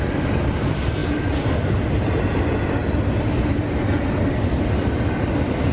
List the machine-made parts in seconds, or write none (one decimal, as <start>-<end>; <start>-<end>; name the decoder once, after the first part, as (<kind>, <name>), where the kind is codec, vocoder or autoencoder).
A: none